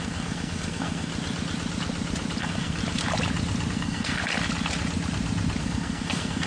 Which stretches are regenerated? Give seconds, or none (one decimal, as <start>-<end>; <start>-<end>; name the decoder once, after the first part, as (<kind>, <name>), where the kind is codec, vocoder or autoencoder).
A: 0.0-1.1 (codec, SNAC); 2.4-2.8; 3.7-4.2; 5.6-6.5

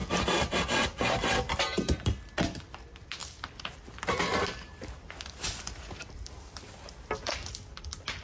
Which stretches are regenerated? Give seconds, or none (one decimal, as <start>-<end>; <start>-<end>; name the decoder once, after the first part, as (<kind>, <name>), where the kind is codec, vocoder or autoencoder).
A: none